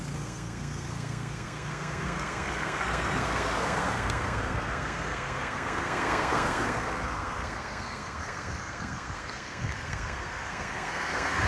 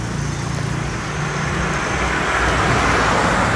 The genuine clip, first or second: second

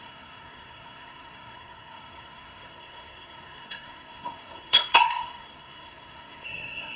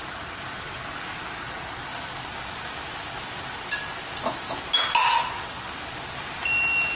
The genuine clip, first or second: second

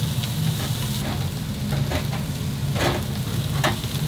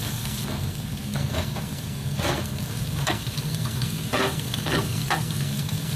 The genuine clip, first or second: first